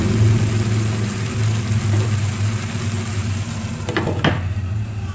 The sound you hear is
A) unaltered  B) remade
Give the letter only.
A